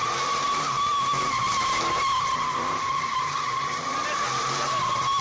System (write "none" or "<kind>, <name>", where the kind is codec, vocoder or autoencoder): vocoder, BigVGAN v2